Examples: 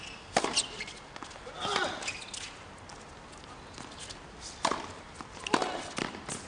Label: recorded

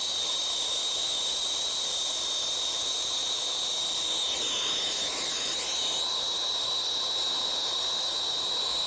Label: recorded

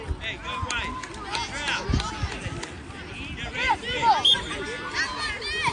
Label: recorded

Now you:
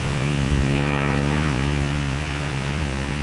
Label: remade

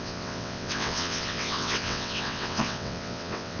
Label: remade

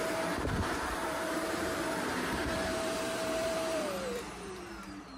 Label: remade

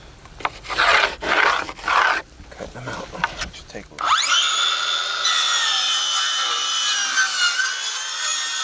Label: remade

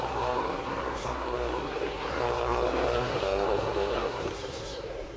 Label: remade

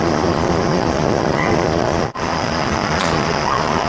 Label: remade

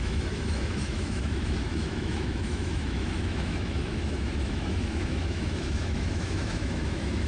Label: remade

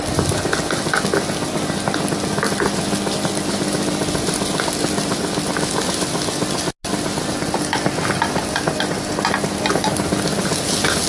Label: recorded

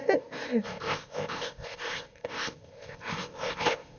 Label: remade